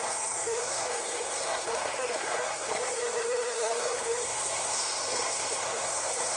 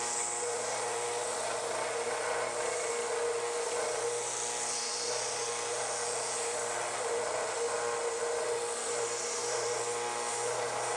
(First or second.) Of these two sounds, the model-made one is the first